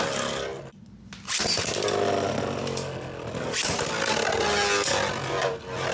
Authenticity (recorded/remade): recorded